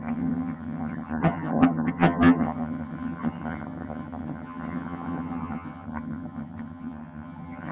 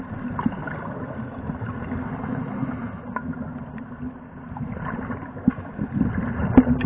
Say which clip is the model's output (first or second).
first